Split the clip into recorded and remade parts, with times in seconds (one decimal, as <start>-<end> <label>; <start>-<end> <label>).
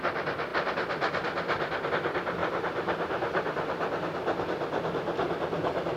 0.0-6.0 recorded